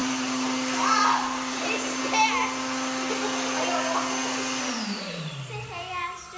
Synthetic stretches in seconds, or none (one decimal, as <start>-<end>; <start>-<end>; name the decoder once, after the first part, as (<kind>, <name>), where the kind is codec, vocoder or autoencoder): 0.0-2.0 (vocoder, BigVGAN v2)

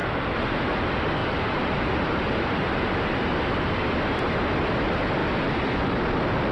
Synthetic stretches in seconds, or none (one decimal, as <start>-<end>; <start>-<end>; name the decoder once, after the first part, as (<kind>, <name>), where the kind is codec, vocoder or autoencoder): 0.0-0.7 (vocoder, BigVGAN v2); 1.2-3.7